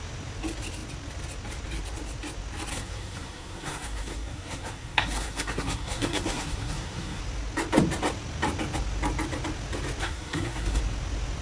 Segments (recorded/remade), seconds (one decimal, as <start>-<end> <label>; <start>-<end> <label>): 0.0-2.7 recorded; 2.7-7.2 remade; 7.2-10.0 recorded; 10.0-10.8 remade; 10.8-11.4 recorded

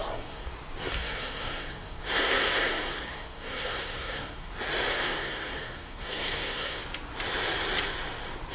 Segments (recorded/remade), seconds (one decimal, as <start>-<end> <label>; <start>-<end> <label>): 0.0-0.5 remade; 0.5-0.9 recorded; 0.9-4.5 remade; 4.5-4.9 recorded; 4.9-6.8 remade; 6.8-8.5 recorded

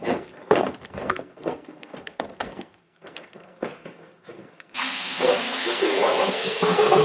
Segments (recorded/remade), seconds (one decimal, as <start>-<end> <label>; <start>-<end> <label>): 0.0-7.0 remade

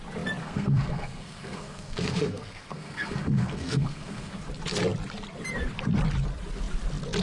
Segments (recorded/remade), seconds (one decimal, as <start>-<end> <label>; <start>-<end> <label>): 0.0-0.4 recorded; 0.4-4.4 remade; 4.4-7.2 recorded

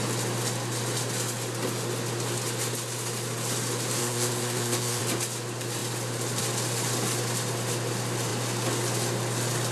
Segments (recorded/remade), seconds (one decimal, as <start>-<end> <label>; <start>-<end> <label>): 0.0-4.0 recorded; 4.0-5.0 remade; 5.0-9.7 recorded